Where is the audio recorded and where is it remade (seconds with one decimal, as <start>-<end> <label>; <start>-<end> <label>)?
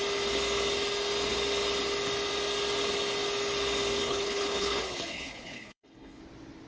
0.0-4.0 recorded; 4.0-6.2 remade; 6.2-6.7 recorded